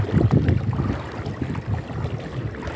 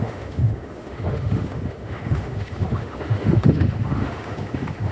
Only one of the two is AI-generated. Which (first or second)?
second